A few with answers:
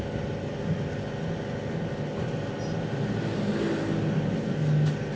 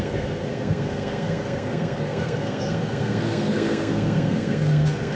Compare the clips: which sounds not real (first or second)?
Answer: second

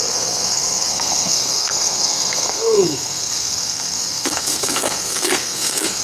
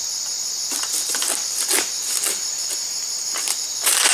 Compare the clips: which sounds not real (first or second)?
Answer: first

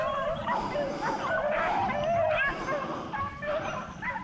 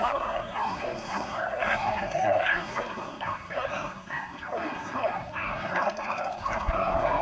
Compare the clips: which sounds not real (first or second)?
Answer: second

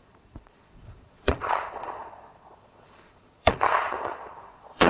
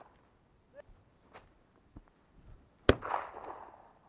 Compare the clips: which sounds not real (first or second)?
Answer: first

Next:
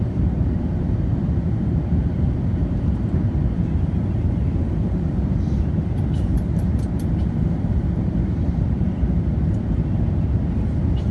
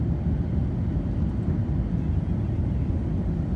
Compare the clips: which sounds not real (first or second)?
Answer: first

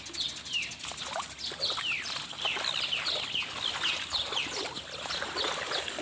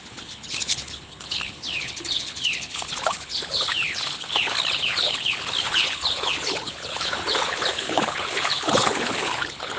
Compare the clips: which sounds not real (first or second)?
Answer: second